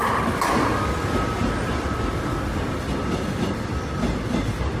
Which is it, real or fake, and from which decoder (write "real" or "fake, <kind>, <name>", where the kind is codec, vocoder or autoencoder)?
real